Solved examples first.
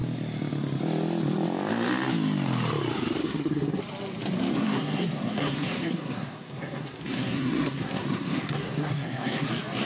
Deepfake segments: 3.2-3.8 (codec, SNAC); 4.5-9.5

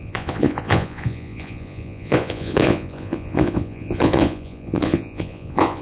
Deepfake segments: 0.0-5.8 (vocoder, Vocos)

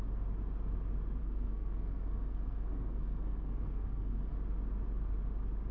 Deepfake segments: 1.2-4.3 (codec, SNAC)